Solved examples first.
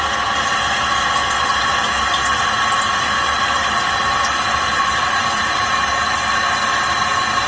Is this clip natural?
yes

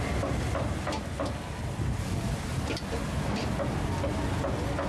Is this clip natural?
yes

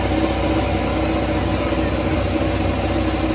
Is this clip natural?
yes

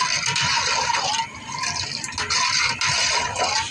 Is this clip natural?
yes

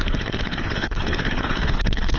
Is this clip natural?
no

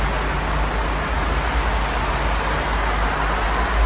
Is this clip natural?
yes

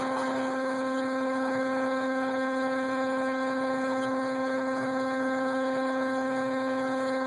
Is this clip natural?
no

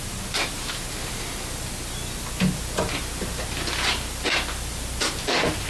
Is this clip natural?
yes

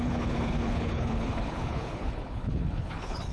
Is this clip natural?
no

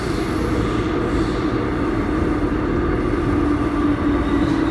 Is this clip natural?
yes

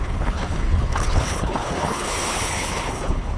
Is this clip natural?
no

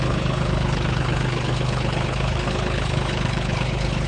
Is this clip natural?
no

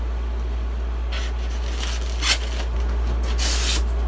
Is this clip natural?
yes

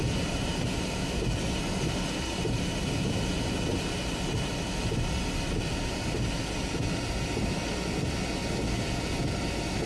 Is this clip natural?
yes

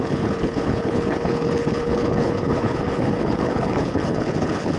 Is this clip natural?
no